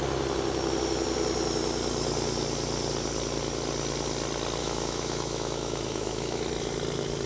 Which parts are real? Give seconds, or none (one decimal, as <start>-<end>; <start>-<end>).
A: 0.0-4.6; 6.4-7.3